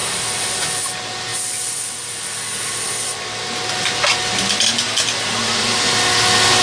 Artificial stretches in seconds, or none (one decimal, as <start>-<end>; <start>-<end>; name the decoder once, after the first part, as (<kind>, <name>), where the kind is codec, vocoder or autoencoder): 0.0-0.8 (vocoder, BigVGAN v2)